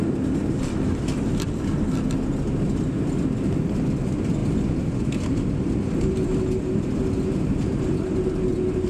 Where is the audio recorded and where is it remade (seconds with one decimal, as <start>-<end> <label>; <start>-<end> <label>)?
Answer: 0.0-4.4 recorded; 4.4-5.0 remade; 5.0-8.9 recorded